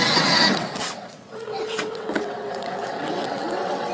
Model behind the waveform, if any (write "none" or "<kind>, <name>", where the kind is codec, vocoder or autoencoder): vocoder, WaveNeXt